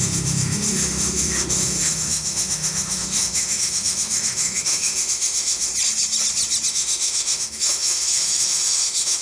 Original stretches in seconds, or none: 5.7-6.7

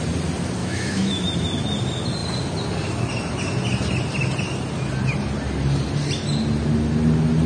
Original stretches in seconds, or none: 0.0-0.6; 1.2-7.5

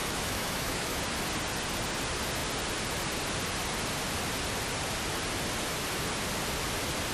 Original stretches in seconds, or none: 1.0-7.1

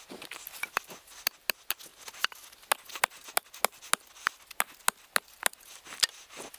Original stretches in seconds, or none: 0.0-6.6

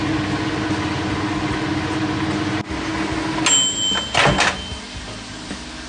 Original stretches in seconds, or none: 0.0-5.9

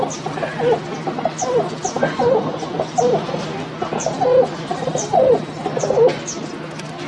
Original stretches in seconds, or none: 0.0-7.1

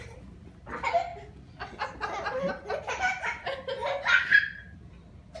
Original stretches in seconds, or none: 0.0-5.4